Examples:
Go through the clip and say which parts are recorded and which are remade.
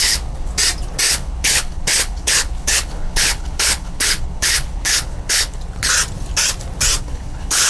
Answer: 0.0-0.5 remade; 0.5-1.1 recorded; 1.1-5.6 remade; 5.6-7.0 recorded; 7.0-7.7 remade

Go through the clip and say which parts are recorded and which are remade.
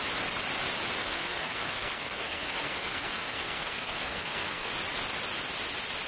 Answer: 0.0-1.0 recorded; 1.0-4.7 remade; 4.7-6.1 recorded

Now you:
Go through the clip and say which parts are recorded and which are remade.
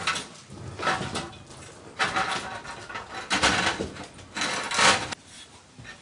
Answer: 0.0-6.0 recorded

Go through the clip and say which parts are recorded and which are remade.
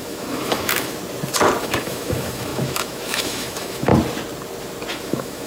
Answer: 0.0-1.0 remade; 1.0-1.6 recorded; 1.6-3.9 remade; 3.9-4.9 recorded; 4.9-5.5 remade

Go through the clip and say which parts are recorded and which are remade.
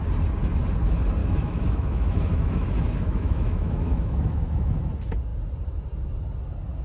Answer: 0.0-1.2 recorded; 1.2-4.8 remade; 4.8-6.8 recorded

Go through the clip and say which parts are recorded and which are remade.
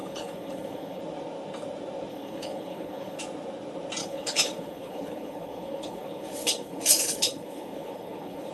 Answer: 0.0-1.0 remade; 1.0-2.1 recorded; 2.1-3.2 remade; 3.2-4.0 recorded; 4.0-8.5 remade